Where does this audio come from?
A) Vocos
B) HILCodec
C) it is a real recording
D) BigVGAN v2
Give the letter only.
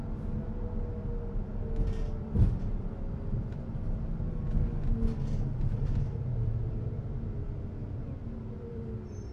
C